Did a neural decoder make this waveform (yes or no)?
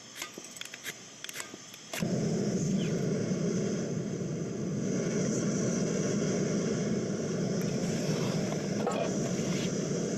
no